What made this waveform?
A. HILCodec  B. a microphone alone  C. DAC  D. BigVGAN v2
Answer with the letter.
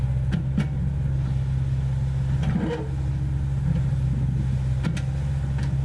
B